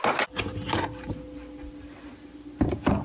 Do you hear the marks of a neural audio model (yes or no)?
no